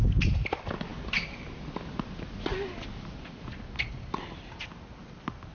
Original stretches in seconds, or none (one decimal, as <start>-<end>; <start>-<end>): 0.0-5.5